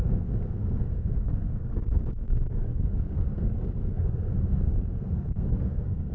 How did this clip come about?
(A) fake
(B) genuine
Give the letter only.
A